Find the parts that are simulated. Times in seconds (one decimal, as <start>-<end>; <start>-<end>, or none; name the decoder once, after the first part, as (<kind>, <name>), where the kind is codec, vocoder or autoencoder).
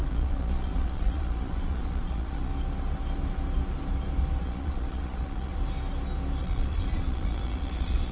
0.0-2.5 (vocoder, Vocos); 4.4-5.5; 6.4-8.1